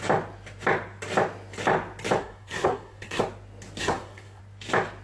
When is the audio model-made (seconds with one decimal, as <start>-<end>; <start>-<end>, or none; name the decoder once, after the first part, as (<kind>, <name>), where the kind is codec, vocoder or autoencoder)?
2.2-3.2 (codec, SNAC); 3.8-4.4